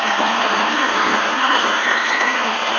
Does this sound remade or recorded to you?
remade